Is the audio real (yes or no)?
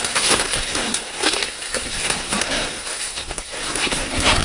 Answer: no